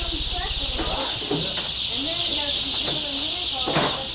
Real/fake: real